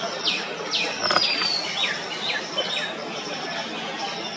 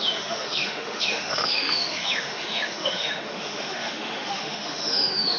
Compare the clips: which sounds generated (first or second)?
second